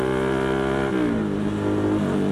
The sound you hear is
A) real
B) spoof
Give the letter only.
A